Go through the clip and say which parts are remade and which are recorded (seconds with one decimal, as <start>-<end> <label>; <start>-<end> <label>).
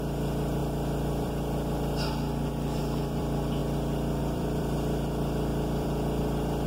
0.0-3.6 remade; 3.6-4.2 recorded; 4.2-6.7 remade